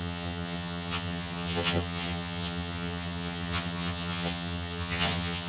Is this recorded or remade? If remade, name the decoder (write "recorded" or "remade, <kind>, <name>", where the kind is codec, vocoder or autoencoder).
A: remade, vocoder, HiFi-GAN